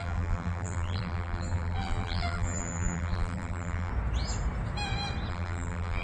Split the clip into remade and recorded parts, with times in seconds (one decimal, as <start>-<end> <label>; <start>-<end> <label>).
0.0-3.9 remade; 3.9-5.3 recorded; 5.3-6.0 remade